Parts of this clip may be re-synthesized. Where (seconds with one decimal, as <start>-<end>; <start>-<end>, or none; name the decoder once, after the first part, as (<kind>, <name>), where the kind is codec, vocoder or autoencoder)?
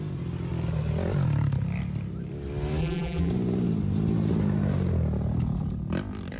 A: 2.8-3.3 (vocoder, BigVGAN v2)